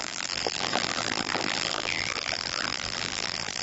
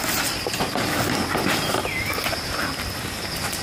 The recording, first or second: second